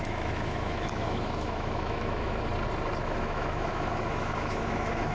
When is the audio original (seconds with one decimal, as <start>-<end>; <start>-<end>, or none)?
2.5-3.0